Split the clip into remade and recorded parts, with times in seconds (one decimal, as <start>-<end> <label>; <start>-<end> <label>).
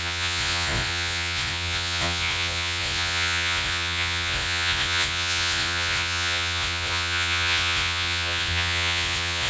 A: 0.0-9.5 remade